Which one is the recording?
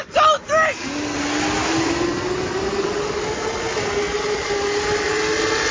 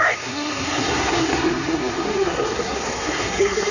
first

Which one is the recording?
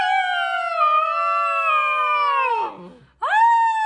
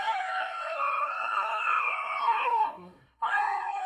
first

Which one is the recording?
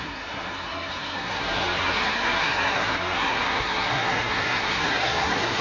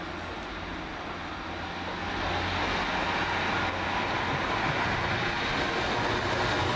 second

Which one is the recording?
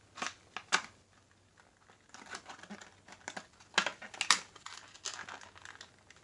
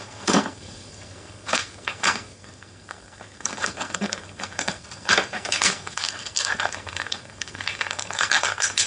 first